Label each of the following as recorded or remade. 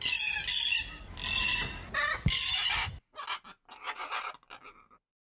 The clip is recorded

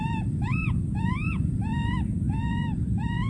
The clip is remade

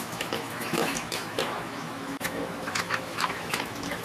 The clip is remade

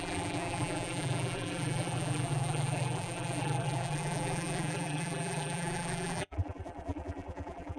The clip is remade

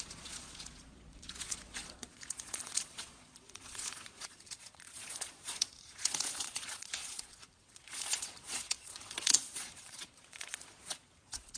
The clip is remade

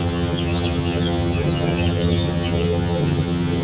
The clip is remade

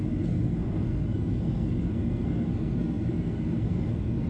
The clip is remade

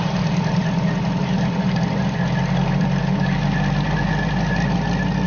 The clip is recorded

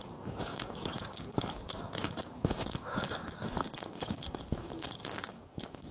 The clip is remade